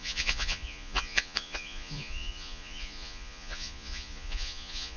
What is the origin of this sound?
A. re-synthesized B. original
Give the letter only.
A